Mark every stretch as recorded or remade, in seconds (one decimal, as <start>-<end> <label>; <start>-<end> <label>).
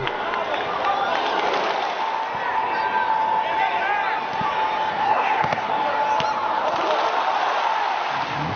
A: 0.0-4.9 recorded; 4.9-5.7 remade; 5.7-8.6 recorded